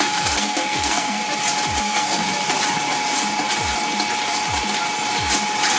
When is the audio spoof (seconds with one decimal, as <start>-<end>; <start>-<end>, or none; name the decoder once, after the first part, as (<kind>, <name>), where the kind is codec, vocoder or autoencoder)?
0.0-1.2 (codec, SNAC); 1.8-2.2